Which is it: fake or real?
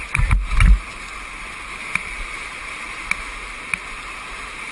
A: real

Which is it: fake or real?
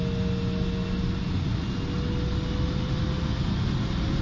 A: real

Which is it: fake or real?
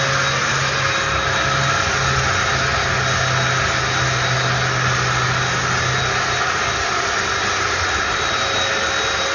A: real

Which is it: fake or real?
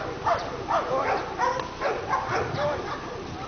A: real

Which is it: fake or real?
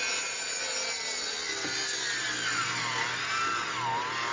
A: real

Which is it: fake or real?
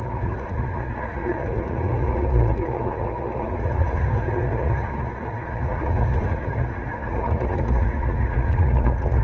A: fake